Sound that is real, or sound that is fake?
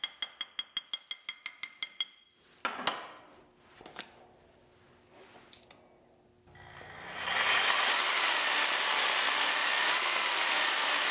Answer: real